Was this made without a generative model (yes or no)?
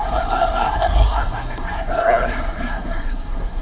no